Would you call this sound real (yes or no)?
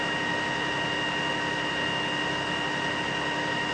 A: yes